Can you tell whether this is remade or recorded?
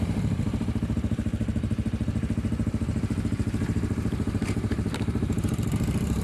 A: remade